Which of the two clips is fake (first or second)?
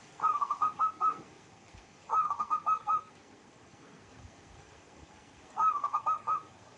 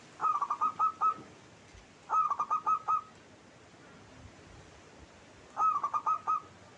first